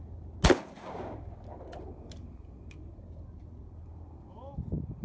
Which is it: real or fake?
real